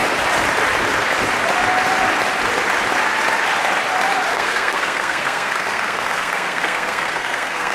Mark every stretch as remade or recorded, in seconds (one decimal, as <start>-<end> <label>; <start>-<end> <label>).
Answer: 0.0-4.3 recorded; 4.3-7.7 remade